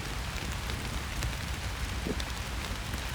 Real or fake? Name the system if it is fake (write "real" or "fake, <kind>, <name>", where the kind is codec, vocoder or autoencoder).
real